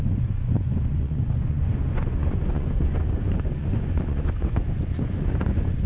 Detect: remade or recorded remade